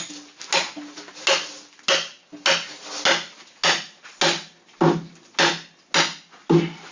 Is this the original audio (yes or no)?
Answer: yes